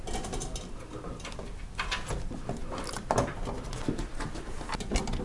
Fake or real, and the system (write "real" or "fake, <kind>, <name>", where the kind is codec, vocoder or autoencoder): real